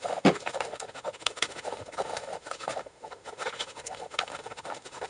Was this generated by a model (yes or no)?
yes